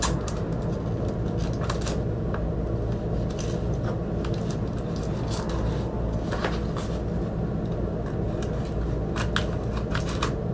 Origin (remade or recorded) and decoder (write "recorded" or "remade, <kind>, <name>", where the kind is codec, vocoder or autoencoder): recorded